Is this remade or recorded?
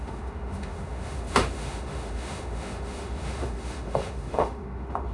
remade